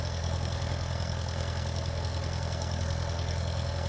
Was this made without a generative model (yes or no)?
no